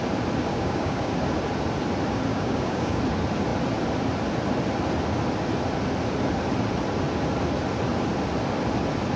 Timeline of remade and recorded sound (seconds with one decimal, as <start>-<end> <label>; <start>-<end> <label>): 0.0-0.5 recorded; 0.5-1.1 remade; 1.1-2.3 recorded; 2.3-3.0 remade; 3.0-9.2 recorded